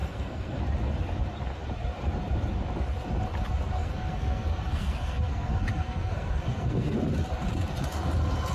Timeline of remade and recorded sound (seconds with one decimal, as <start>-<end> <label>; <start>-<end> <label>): 0.0-0.6 remade; 0.6-3.8 recorded; 3.8-7.0 remade; 7.0-8.5 recorded